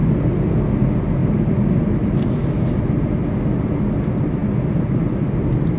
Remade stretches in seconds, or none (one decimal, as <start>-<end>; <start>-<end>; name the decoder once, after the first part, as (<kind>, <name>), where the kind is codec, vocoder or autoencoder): none